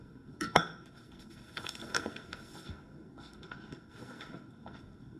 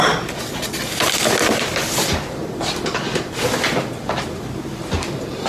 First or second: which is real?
second